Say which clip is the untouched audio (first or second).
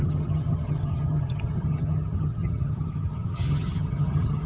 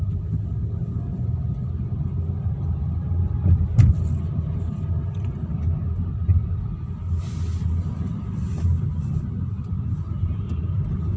second